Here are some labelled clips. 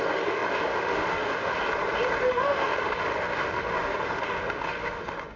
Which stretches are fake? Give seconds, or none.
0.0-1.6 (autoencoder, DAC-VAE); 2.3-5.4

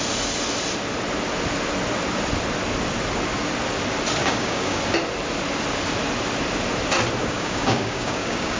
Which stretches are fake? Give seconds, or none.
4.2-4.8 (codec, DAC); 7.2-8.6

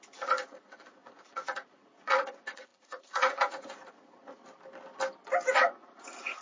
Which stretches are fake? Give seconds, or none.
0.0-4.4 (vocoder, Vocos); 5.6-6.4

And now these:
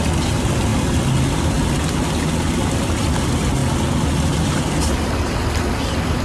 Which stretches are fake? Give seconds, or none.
none

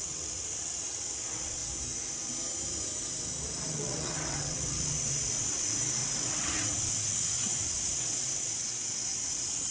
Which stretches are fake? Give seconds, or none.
0.0-1.6 (vocoder, WaveNeXt); 3.7-9.7